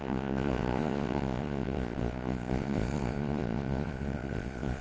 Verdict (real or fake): fake